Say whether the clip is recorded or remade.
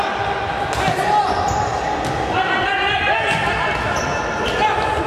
recorded